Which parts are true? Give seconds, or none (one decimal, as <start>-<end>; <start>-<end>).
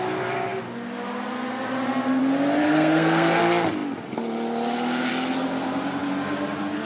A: 0.0-2.6; 3.4-6.9